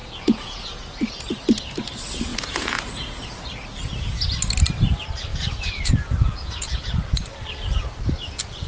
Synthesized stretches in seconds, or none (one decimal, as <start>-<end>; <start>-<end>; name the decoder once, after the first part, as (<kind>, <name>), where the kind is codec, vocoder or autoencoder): 0.0-0.7 (vocoder, Vocos); 2.3-3.4; 5.3-6.8